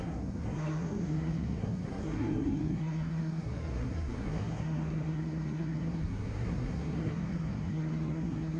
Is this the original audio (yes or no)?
no